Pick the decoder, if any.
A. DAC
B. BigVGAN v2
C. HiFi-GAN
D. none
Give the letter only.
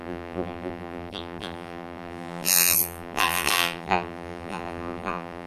B